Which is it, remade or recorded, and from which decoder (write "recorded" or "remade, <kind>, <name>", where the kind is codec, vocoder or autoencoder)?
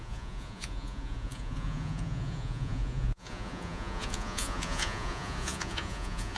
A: remade, vocoder, Vocos